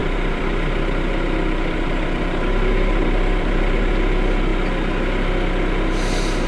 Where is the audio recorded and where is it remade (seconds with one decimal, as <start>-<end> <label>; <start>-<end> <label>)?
0.0-3.9 remade; 3.9-6.5 recorded